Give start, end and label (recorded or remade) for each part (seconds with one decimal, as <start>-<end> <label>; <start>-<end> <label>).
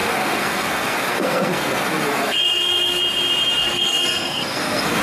0.0-3.0 remade; 3.0-3.6 recorded; 3.6-5.0 remade